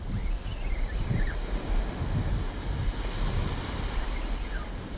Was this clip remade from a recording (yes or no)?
no